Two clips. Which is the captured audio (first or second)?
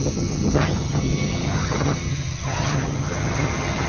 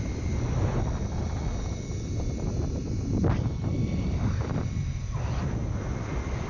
second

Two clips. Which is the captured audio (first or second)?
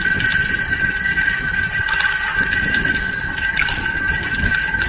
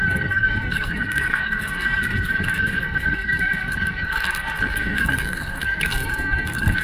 first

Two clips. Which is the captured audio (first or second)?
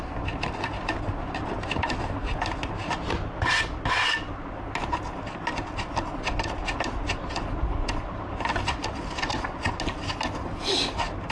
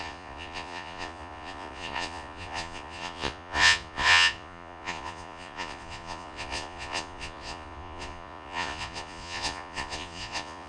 first